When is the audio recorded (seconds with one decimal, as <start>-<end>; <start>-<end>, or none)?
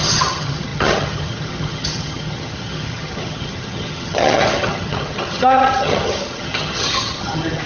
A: none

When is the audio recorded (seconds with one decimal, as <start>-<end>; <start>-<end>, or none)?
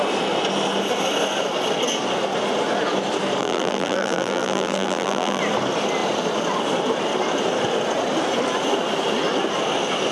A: 0.0-3.4; 5.4-10.1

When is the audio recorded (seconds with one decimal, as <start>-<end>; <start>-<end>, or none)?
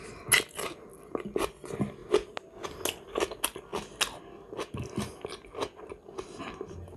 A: 0.0-7.0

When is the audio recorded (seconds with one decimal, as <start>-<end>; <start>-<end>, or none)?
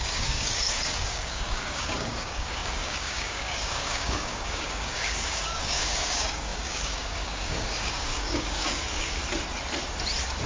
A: 9.2-10.5